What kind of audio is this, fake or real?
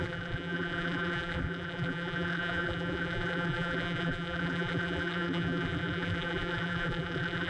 fake